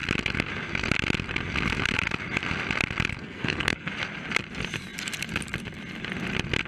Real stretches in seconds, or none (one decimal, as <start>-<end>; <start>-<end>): 0.0-3.1; 3.9-6.7